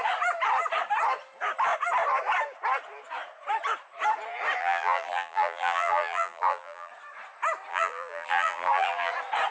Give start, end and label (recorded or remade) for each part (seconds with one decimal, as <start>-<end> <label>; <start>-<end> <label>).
0.0-4.6 recorded; 4.6-6.9 remade; 6.9-7.7 recorded; 7.7-9.1 remade; 9.1-9.5 recorded